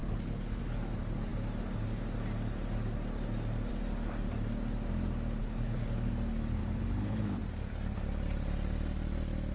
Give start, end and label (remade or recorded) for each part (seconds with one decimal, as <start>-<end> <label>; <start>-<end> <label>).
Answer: 0.0-0.6 remade; 0.6-5.4 recorded; 5.4-6.1 remade; 6.1-6.6 recorded; 6.6-7.4 remade; 7.4-9.5 recorded